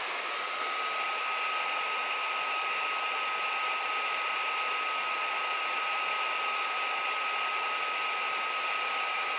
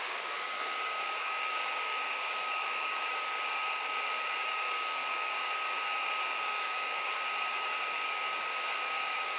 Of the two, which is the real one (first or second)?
first